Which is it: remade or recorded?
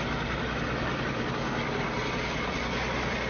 recorded